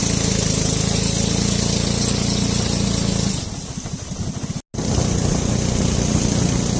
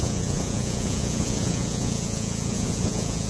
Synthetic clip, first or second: second